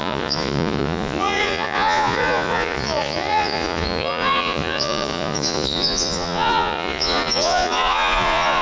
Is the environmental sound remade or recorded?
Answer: remade